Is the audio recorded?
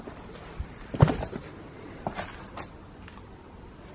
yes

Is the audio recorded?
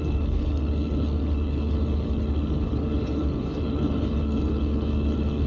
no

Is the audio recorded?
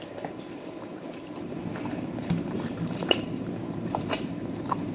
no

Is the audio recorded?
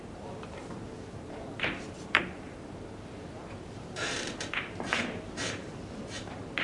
no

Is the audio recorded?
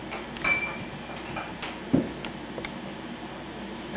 yes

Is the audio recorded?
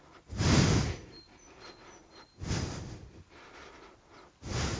yes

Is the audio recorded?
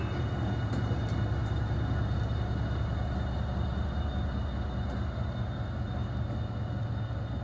yes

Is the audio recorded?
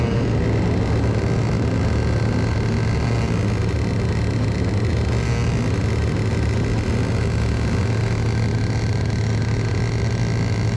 yes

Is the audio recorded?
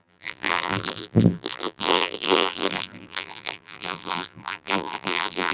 no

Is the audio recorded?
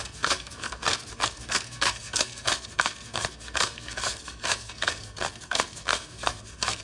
no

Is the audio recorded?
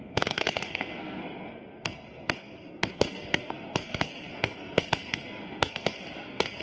no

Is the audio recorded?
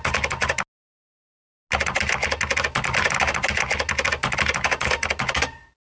yes